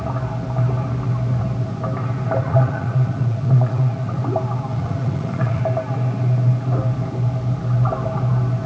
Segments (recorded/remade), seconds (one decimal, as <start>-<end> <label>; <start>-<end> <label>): 0.0-2.4 recorded; 2.4-4.2 remade; 4.2-4.7 recorded; 4.7-5.6 remade; 5.6-8.7 recorded